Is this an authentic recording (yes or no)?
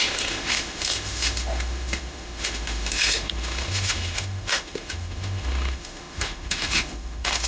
no